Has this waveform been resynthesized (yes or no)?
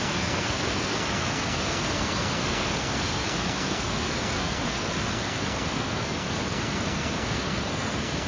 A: yes